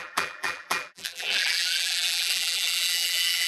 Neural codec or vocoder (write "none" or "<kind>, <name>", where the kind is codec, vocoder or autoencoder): vocoder, BigVGAN v2